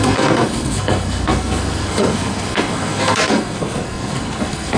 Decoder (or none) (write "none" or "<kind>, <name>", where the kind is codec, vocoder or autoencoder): codec, SNAC